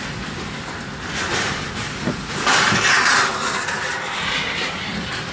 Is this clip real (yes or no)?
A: no